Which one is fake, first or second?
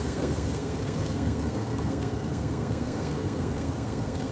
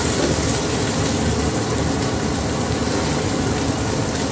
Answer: first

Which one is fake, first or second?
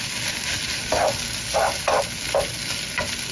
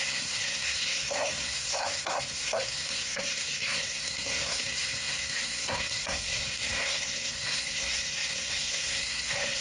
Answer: second